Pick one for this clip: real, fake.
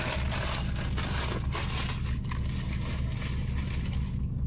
real